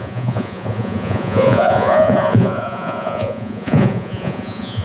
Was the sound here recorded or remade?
remade